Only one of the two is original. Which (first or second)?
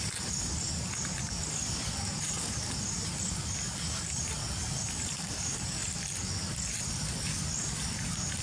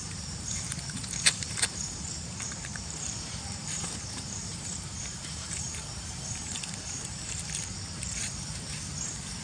first